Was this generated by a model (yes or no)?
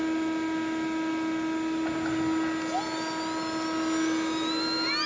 no